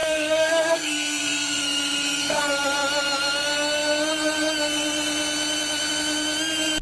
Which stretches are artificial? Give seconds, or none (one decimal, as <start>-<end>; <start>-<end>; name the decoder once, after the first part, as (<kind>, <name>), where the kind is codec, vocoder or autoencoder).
0.0-2.4 (codec, SNAC)